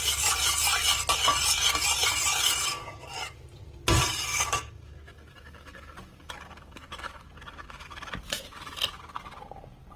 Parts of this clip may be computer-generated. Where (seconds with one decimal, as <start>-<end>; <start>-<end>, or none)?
2.7-3.2; 4.0-8.1